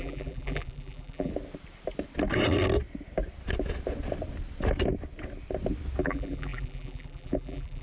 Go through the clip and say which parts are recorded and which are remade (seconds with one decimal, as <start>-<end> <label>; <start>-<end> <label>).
0.0-1.3 remade; 1.3-6.0 recorded; 6.0-7.8 remade